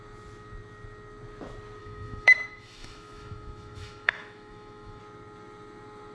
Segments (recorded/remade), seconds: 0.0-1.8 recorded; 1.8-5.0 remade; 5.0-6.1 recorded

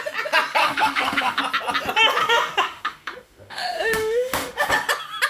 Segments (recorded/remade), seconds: 0.0-0.6 recorded; 0.6-1.4 remade; 1.4-2.2 recorded; 2.2-4.7 remade; 4.7-5.3 recorded

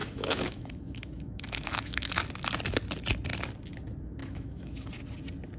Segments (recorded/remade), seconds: 0.0-2.2 remade; 2.2-4.2 recorded; 4.2-4.9 remade; 4.9-5.6 recorded

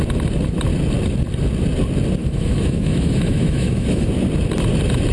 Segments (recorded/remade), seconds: 0.0-2.2 recorded; 2.2-4.1 remade; 4.1-5.1 recorded

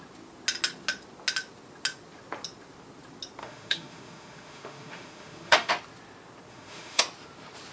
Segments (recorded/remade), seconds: 0.0-3.4 recorded; 3.4-5.7 remade; 5.7-6.5 recorded; 6.5-7.0 remade; 7.0-7.7 recorded

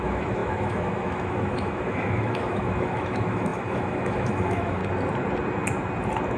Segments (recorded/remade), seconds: 0.0-4.8 remade; 4.8-6.4 recorded

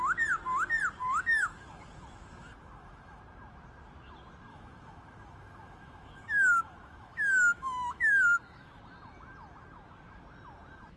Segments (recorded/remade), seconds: 0.0-1.3 recorded; 1.3-3.2 remade; 3.2-4.5 recorded; 4.5-8.8 remade; 8.8-11.0 recorded

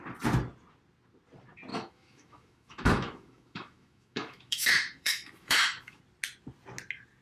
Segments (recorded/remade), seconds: 0.0-1.7 recorded; 1.7-6.0 remade; 6.0-7.2 recorded